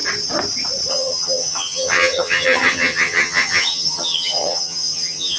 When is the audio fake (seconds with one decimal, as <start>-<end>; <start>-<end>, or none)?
0.9-5.4